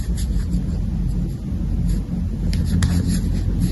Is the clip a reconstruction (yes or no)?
no